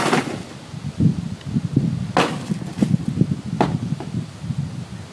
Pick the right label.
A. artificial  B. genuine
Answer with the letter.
B